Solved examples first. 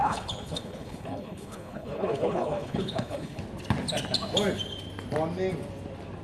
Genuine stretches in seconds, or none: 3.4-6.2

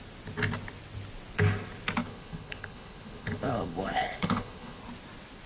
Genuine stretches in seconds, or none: 0.0-2.0; 4.8-5.5

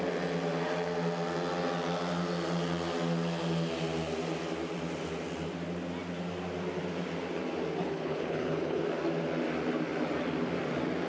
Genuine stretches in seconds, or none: 0.0-7.8; 8.8-11.1